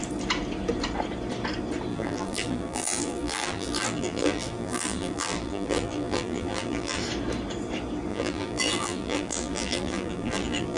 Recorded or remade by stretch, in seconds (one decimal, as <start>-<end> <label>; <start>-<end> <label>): 0.0-1.9 recorded; 1.9-7.0 remade; 7.0-8.1 recorded; 8.1-10.8 remade